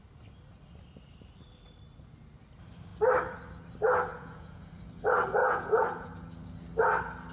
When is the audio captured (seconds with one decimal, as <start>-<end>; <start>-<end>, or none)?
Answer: 0.0-4.1; 4.7-5.4; 6.1-7.3